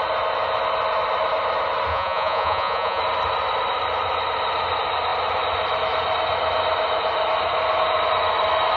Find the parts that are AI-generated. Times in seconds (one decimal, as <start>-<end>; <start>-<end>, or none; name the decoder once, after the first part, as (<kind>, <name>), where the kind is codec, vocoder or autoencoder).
1.9-3.0 (vocoder, Vocos)